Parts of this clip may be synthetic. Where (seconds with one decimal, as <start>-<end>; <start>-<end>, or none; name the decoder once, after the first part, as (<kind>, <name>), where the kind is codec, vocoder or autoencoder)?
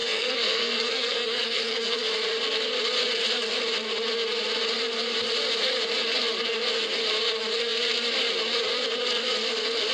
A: 0.0-2.1 (codec, SNAC)